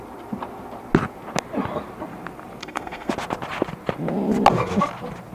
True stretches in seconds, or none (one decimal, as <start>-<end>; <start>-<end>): 0.0-2.6; 3.1-5.3